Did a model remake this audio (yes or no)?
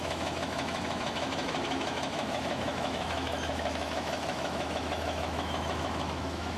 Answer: yes